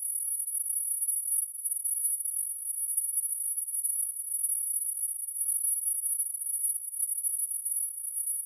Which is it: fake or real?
fake